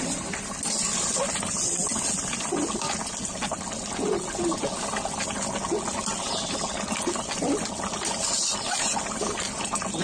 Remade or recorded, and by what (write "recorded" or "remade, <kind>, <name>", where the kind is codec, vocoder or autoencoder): recorded